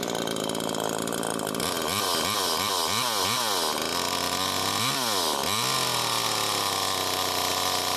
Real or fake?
real